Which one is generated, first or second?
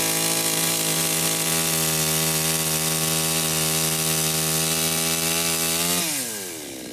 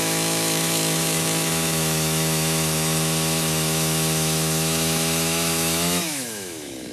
second